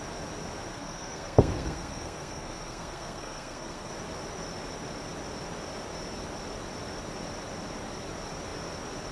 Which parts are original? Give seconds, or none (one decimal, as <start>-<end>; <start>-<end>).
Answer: 0.0-0.7; 3.9-9.1